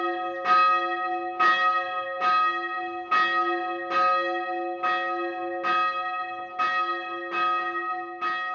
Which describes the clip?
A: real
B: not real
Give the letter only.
A